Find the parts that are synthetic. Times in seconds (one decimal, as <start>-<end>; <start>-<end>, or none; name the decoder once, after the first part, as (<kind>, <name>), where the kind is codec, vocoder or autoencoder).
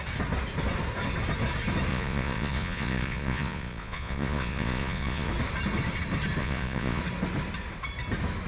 1.9-5.3 (vocoder, Vocos); 6.4-7.0